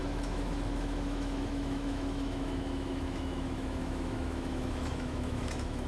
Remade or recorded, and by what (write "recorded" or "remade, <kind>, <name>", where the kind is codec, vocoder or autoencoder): remade, autoencoder, DAC-VAE